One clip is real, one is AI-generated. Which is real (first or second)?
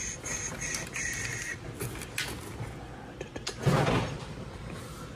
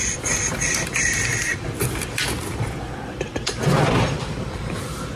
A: first